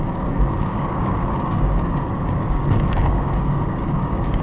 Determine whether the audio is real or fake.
fake